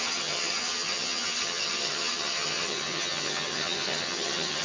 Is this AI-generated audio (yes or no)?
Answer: yes